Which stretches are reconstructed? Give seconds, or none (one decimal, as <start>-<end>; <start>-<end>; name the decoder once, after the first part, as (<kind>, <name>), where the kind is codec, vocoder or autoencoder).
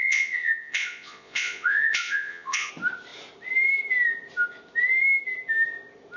0.0-2.7 (vocoder, Vocos)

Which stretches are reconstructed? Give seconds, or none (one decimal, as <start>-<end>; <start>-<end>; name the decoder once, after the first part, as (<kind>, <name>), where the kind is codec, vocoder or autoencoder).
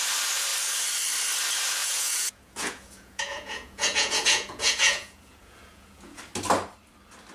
1.8-6.2 (vocoder, Vocos)